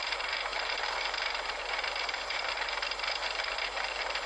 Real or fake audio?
fake